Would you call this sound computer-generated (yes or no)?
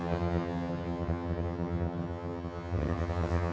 yes